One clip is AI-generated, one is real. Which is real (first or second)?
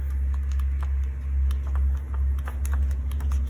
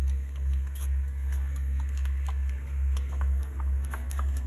first